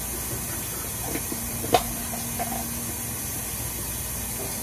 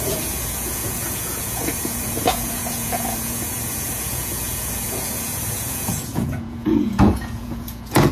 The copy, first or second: second